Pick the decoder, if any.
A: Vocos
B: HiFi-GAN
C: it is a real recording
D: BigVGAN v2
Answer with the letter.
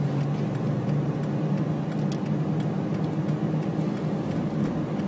C